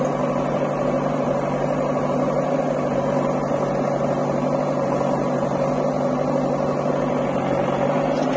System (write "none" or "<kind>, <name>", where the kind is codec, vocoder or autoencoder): none